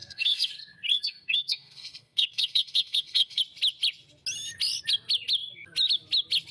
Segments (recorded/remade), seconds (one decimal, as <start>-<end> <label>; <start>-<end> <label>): 0.0-0.5 remade; 0.5-0.9 recorded; 0.9-3.4 remade; 3.4-6.5 recorded